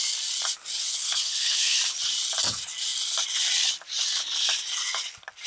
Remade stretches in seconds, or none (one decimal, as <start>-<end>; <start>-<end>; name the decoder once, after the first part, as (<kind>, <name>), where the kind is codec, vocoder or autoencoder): 0.8-1.8 (codec, HILCodec)